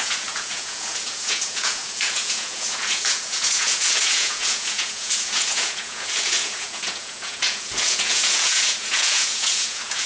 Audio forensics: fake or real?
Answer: fake